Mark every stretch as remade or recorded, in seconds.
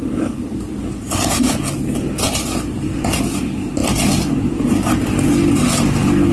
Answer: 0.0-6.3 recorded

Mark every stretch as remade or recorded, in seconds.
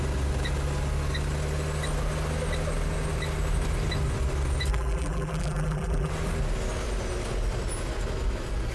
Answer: 0.0-4.7 recorded; 4.7-6.1 remade; 6.1-8.7 recorded